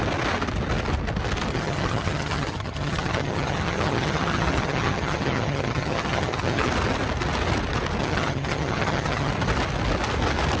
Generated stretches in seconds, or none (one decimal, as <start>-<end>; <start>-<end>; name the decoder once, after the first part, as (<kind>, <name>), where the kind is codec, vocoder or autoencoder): 1.5-6.7 (vocoder, HiFi-GAN); 8.0-9.3